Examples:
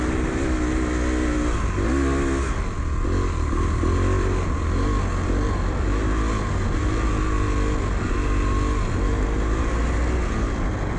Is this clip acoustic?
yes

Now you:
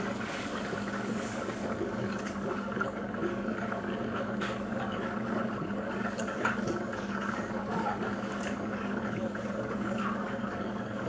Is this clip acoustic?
no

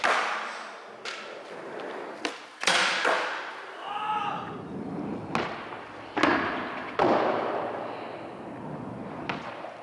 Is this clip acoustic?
yes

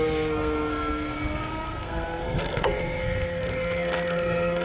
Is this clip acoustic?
no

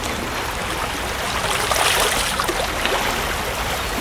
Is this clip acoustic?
yes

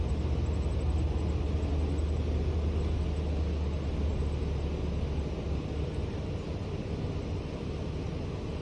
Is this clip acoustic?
yes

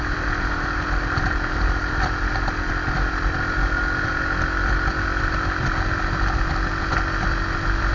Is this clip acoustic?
yes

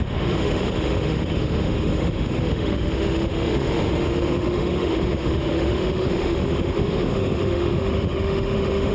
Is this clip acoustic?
no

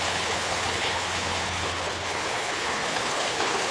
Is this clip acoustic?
no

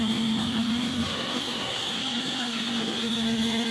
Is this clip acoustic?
no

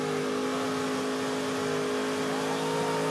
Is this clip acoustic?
yes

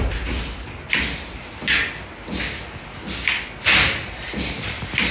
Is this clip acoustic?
yes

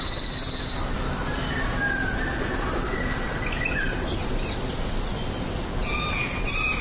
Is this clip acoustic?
yes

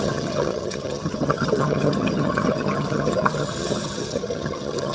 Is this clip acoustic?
no